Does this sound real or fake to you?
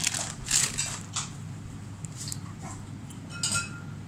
real